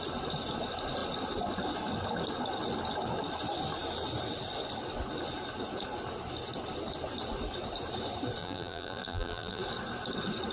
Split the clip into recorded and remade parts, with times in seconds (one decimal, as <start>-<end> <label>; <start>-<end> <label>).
0.0-8.4 recorded; 8.4-9.6 remade; 9.6-10.5 recorded